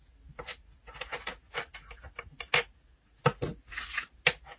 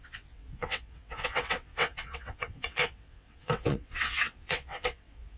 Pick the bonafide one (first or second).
first